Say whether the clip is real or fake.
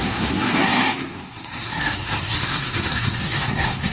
fake